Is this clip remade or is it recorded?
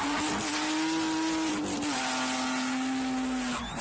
recorded